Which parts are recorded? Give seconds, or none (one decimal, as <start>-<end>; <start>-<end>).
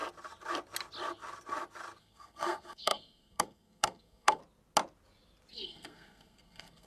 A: 0.0-2.0; 4.4-5.5